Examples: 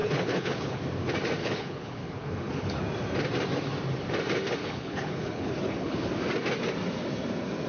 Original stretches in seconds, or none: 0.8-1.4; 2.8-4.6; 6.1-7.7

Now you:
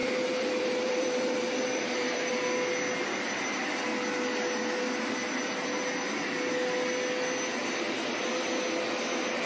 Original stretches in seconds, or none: 2.3-9.5

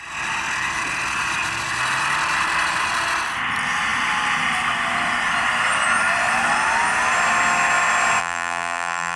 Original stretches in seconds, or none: 0.0-8.2

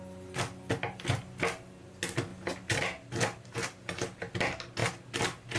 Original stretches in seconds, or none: 0.0-5.6

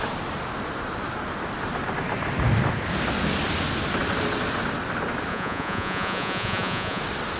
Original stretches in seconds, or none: 0.0-5.3; 7.0-7.4

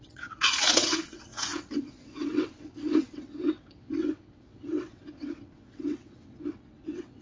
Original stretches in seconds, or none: none

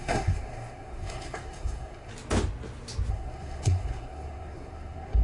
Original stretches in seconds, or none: 2.1-3.1